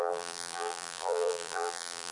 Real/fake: fake